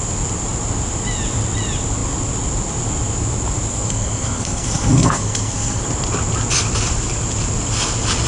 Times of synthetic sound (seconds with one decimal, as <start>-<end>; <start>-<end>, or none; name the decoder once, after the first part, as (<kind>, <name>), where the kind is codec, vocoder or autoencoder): 3.7-5.8 (codec, SNAC)